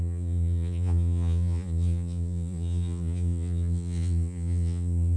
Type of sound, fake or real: fake